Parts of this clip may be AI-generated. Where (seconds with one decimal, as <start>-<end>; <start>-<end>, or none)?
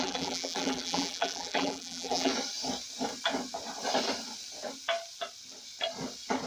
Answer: 0.0-2.3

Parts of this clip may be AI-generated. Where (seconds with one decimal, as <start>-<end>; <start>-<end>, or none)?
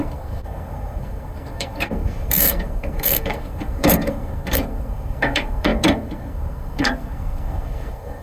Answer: 0.0-8.2